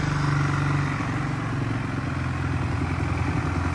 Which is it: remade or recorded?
recorded